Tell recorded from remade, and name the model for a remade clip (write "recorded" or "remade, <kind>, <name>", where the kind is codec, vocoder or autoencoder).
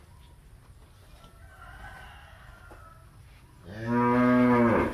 recorded